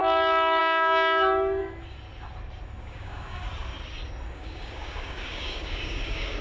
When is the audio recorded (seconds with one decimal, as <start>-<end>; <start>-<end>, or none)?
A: 0.0-0.6; 1.6-2.8; 3.4-4.3